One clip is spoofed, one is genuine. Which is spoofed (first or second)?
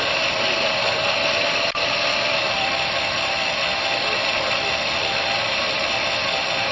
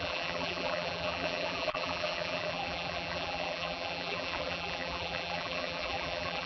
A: second